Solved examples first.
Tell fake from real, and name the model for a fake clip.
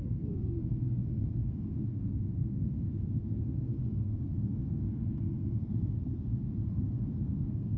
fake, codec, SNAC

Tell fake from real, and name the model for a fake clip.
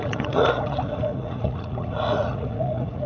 fake, vocoder, Vocos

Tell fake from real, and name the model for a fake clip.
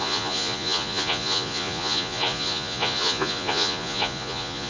fake, vocoder, Vocos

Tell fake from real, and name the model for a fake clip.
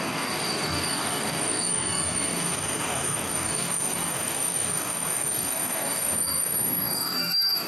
fake, codec, DAC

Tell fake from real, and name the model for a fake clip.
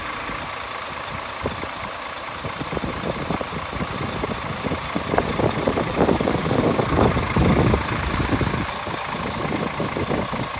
fake, vocoder, BigVGAN v2